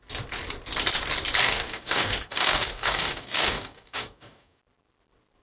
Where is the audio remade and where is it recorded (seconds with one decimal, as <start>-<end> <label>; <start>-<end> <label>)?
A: 0.0-1.4 recorded; 1.4-4.6 remade; 4.6-5.4 recorded